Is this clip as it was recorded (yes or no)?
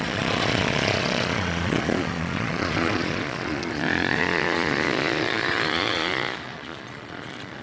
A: no